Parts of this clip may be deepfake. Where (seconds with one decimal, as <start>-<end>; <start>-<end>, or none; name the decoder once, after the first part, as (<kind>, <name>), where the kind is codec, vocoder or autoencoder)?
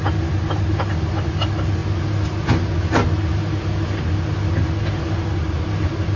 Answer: none